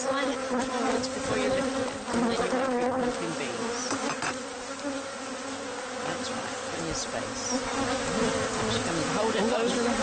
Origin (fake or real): real